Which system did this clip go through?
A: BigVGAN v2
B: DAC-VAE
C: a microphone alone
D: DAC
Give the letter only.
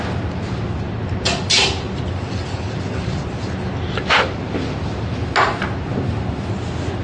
C